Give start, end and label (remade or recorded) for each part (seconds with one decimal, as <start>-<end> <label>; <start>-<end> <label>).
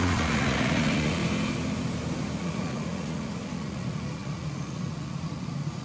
0.0-1.2 remade; 1.2-2.4 recorded; 2.4-5.8 remade